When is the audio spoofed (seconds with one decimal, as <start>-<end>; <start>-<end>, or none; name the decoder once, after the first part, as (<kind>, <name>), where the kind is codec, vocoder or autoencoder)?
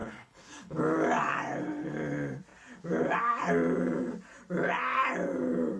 0.0-0.8 (codec, HILCodec)